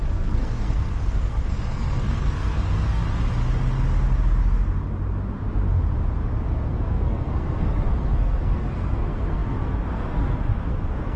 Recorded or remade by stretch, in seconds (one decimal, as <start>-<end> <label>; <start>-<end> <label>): 0.0-3.0 remade; 3.0-6.5 recorded; 6.5-11.2 remade